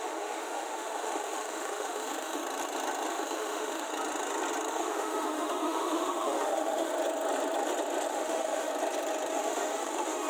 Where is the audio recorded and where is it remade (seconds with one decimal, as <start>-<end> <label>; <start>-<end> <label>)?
0.0-2.4 remade; 2.4-3.1 recorded; 3.1-3.9 remade; 3.9-4.7 recorded; 4.7-6.9 remade; 6.9-8.1 recorded; 8.1-8.7 remade; 8.7-9.3 recorded; 9.3-10.3 remade